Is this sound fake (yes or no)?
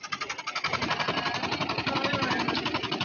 no